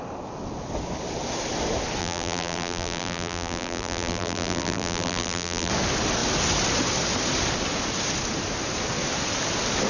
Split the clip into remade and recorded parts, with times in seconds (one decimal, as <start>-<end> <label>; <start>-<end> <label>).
0.0-2.0 recorded; 2.0-5.7 remade; 5.7-9.9 recorded

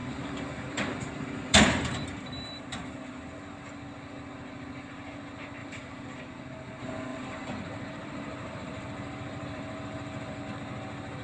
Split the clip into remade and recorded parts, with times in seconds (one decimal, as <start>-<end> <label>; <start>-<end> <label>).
0.0-2.6 remade; 2.6-5.6 recorded; 5.6-6.2 remade; 6.2-7.1 recorded; 7.1-10.4 remade; 10.4-11.2 recorded

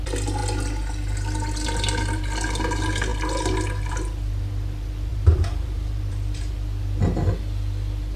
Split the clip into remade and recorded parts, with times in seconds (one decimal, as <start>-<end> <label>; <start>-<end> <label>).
0.0-5.1 recorded; 5.1-6.5 remade; 6.5-8.2 recorded

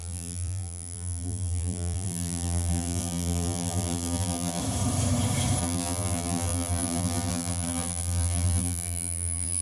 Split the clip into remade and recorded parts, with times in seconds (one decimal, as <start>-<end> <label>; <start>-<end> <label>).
0.0-4.6 remade; 4.6-5.6 recorded; 5.6-9.6 remade